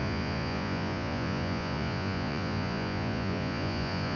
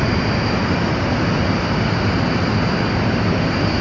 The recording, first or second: second